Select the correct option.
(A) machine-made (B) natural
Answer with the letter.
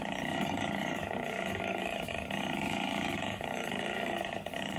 A